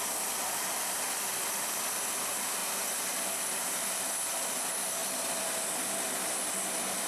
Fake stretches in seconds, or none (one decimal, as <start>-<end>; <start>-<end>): none